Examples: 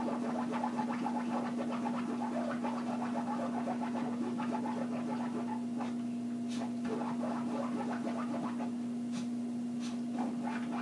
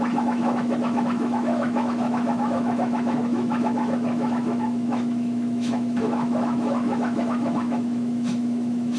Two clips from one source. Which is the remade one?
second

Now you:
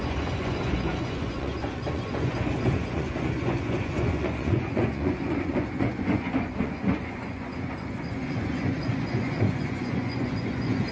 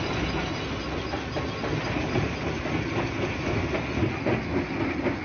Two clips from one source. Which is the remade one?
first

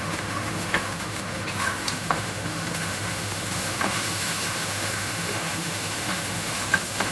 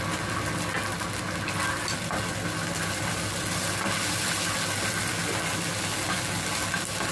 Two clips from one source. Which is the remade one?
first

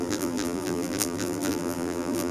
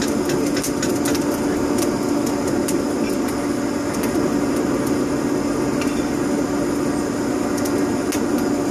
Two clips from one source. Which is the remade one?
first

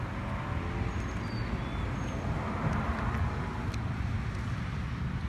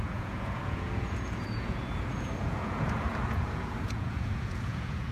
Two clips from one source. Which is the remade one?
second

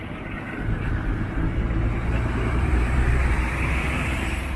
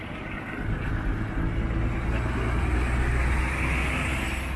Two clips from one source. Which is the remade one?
first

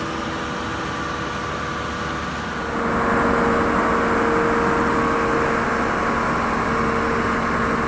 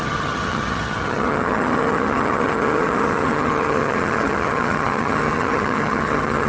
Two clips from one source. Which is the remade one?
second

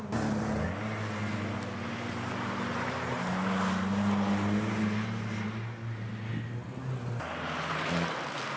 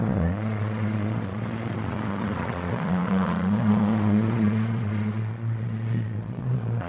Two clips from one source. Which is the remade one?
second